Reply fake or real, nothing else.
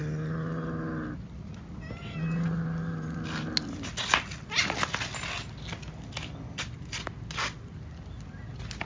real